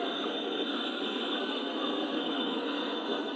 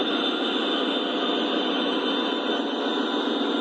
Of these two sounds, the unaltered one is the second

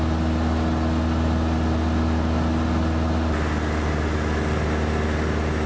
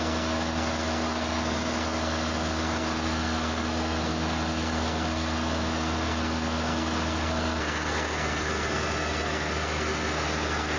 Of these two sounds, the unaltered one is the first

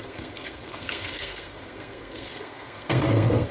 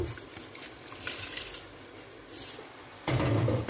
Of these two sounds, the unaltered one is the second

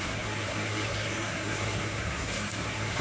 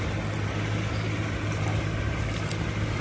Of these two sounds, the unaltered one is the second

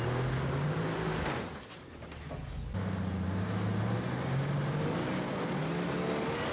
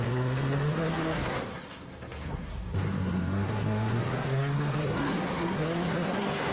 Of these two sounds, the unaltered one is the first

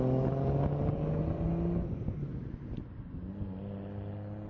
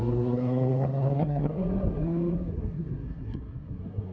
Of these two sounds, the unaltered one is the first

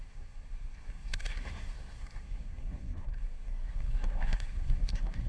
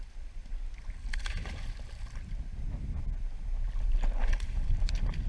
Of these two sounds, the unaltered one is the second